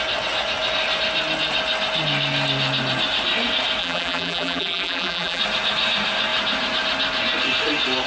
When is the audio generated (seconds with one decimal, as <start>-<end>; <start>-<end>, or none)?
3.8-5.4